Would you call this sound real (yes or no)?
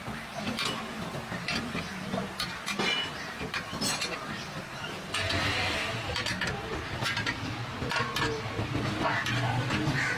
yes